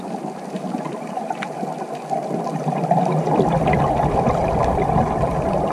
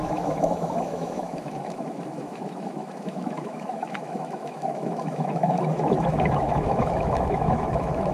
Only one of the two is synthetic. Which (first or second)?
second